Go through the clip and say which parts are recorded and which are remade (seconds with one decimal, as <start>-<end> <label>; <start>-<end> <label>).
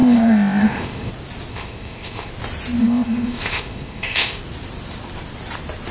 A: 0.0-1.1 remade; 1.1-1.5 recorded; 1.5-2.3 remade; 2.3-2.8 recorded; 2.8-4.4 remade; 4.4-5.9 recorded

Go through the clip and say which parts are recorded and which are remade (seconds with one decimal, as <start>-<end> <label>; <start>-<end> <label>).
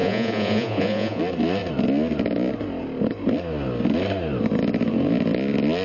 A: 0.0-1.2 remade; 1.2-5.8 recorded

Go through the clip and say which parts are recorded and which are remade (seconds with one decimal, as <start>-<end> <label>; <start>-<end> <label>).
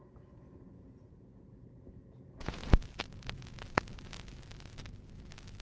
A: 0.0-2.6 remade; 2.6-5.6 recorded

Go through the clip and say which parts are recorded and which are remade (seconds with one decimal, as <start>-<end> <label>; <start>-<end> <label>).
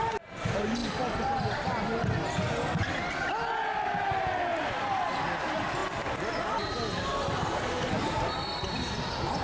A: 0.0-9.4 recorded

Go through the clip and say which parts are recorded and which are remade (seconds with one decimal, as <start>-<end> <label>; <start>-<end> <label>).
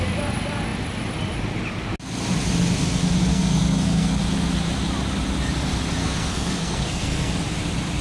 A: 0.0-3.3 recorded; 3.3-4.2 remade; 4.2-6.0 recorded; 6.0-7.3 remade; 7.3-8.0 recorded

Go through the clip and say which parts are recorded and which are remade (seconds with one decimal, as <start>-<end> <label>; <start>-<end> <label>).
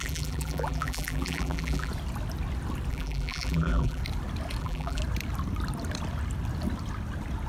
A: 0.0-1.9 remade; 1.9-2.9 recorded; 2.9-4.0 remade; 4.0-4.6 recorded; 4.6-5.0 remade; 5.0-7.5 recorded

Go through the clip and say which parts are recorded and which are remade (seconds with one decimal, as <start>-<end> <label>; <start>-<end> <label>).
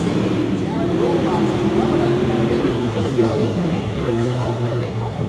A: 0.0-2.6 recorded; 2.6-5.3 remade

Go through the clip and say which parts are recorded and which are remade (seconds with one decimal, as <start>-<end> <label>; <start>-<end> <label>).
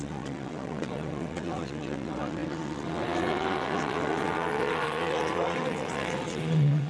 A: 0.0-6.9 remade